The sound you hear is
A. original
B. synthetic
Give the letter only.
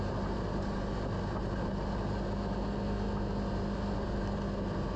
A